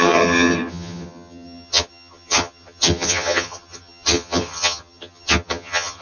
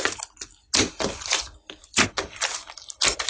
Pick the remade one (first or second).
first